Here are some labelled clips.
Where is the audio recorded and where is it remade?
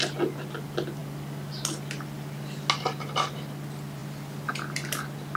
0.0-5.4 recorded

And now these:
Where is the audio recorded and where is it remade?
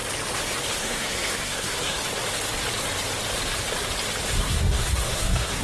0.0-0.8 recorded; 0.8-2.0 remade; 2.0-4.3 recorded; 4.3-5.6 remade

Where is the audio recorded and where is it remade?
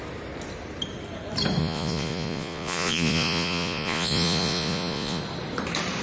0.0-1.6 recorded; 1.6-5.2 remade; 5.2-6.0 recorded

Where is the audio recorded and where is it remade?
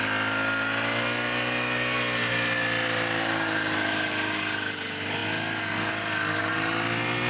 0.0-7.3 recorded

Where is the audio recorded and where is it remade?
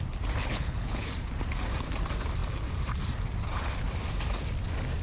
0.0-0.4 recorded; 0.4-1.1 remade; 1.1-5.0 recorded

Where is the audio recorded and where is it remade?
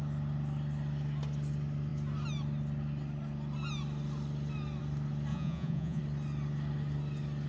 0.0-5.3 recorded; 5.3-6.0 remade; 6.0-7.5 recorded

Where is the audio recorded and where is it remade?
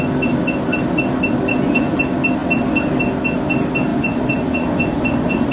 0.0-1.5 recorded; 1.5-2.0 remade; 2.0-3.9 recorded; 3.9-5.5 remade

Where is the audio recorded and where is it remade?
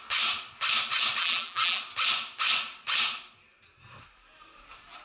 0.0-1.2 recorded; 1.2-1.8 remade; 1.8-5.0 recorded